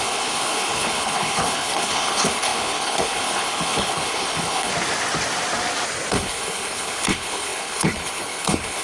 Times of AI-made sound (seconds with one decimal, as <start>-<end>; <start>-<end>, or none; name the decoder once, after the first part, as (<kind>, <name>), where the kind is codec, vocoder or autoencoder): 0.0-4.7 (codec, HILCodec); 6.1-8.8